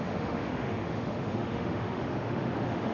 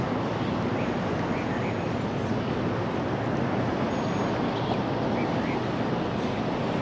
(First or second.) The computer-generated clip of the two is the first